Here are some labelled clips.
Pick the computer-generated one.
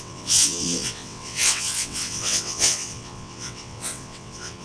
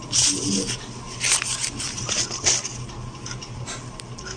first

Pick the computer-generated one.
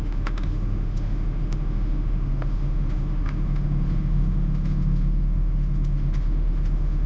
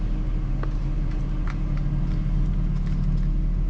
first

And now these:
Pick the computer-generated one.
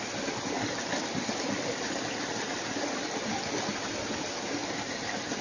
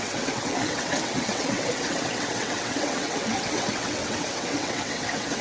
second